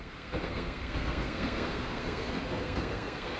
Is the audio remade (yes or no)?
yes